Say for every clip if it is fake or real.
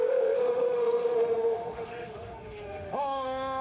fake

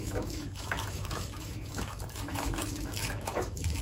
fake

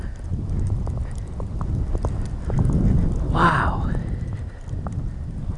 real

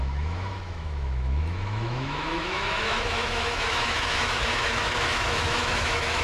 fake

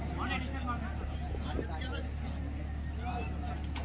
real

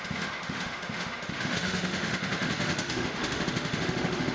fake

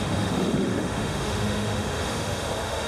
fake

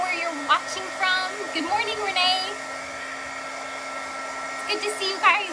real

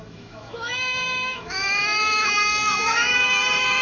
fake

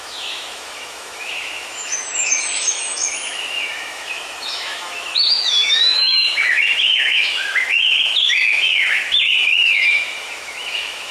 fake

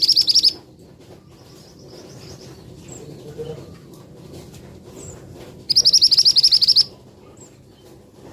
real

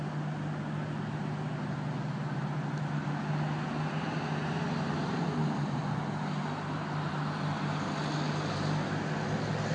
real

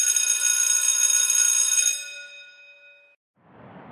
real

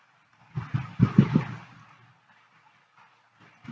real